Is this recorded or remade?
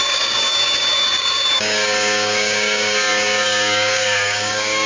remade